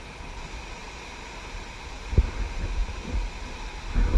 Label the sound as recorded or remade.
recorded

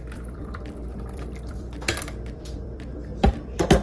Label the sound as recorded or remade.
remade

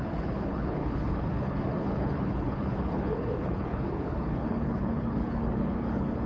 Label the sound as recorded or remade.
remade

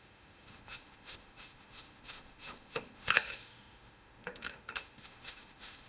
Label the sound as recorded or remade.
remade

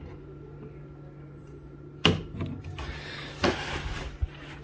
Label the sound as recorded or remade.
recorded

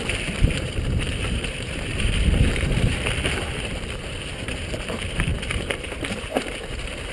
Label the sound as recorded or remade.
remade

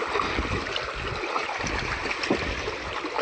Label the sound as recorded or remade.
recorded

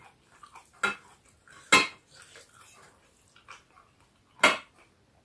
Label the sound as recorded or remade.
recorded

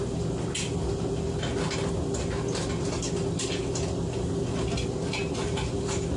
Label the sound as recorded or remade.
recorded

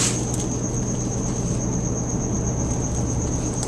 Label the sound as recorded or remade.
recorded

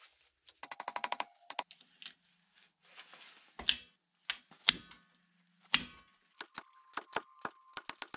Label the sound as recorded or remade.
recorded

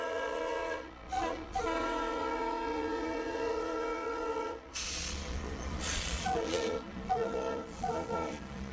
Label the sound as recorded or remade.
remade